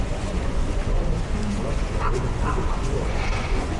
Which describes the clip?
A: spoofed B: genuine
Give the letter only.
A